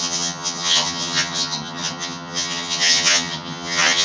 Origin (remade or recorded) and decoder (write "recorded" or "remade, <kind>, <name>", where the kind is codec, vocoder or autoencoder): remade, vocoder, HiFi-GAN